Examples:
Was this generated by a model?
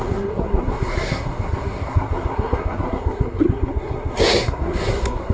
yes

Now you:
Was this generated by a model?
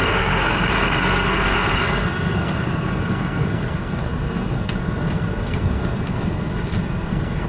yes